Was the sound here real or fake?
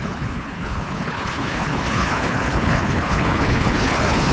fake